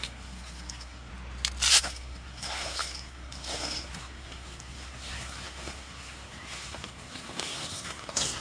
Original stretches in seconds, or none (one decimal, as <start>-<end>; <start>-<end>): 1.1-1.7